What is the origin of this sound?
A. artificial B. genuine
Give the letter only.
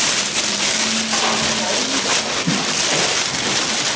B